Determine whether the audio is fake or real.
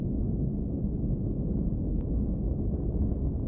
real